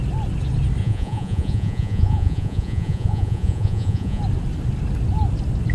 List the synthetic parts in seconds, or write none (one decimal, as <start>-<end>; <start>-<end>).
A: 0.8-4.2